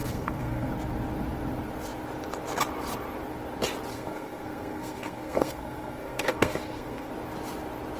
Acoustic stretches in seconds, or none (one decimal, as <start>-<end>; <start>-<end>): 0.7-3.9; 7.1-8.0